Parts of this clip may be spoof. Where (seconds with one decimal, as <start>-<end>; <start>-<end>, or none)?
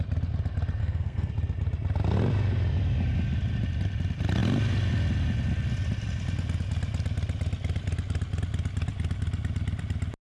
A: 0.8-1.3